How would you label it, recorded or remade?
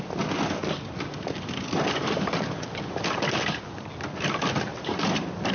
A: recorded